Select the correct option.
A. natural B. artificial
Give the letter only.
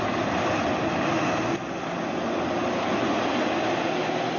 A